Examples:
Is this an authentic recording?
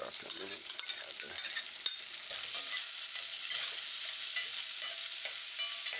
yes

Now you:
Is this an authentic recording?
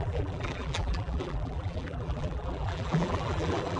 no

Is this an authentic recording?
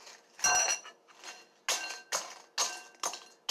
yes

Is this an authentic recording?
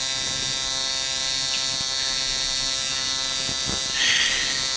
yes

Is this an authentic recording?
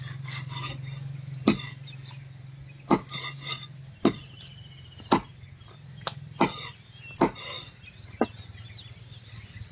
yes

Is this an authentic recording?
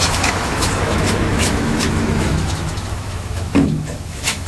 no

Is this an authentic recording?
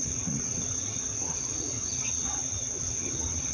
no